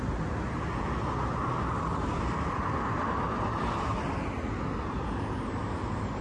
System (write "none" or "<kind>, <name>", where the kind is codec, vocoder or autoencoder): none